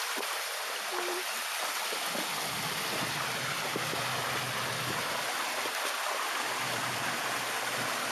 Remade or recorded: recorded